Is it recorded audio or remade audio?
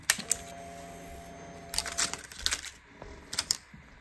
recorded